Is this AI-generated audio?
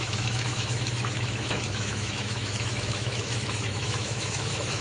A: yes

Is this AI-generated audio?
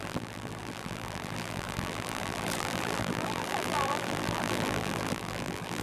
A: yes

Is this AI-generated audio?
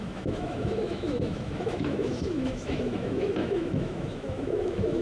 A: yes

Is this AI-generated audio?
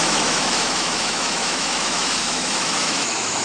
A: yes